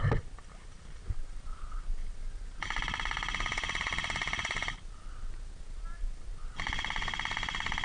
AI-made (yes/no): no